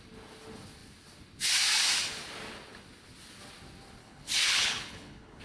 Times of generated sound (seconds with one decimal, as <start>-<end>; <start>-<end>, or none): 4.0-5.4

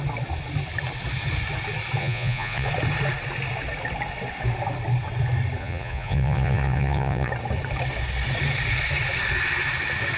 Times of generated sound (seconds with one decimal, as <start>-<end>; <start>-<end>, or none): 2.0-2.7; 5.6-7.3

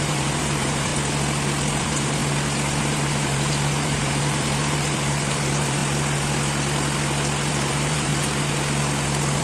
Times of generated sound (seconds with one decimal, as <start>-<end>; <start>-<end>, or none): 0.0-0.9; 1.8-2.2; 2.8-5.8; 7.5-8.1

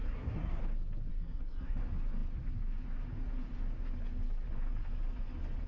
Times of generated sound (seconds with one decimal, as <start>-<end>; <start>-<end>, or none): 0.0-0.6; 1.1-1.8